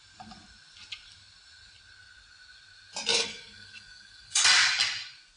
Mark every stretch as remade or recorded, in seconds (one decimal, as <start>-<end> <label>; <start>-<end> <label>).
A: 0.0-3.1 recorded; 3.1-4.4 remade; 4.4-5.4 recorded

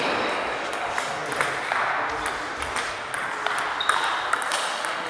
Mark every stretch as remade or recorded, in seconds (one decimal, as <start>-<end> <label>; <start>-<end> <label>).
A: 0.0-1.2 remade; 1.2-4.3 recorded; 4.3-5.1 remade